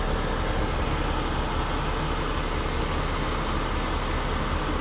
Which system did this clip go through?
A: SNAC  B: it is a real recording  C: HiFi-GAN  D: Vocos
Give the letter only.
B